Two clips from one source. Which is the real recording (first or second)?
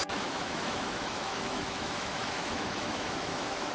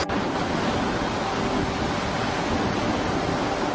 second